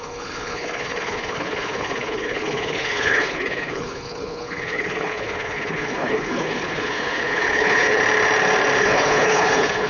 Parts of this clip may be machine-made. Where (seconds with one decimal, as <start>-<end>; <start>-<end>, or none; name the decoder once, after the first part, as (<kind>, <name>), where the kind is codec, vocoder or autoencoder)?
0.0-8.0 (codec, HILCodec); 8.8-9.9